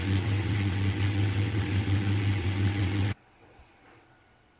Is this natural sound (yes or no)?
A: no